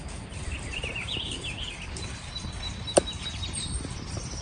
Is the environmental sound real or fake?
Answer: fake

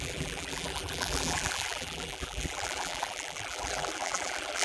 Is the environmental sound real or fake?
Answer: fake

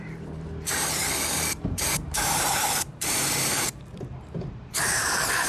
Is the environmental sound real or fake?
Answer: fake